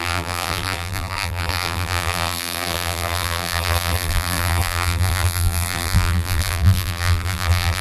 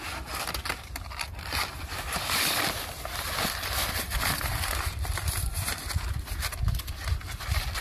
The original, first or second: second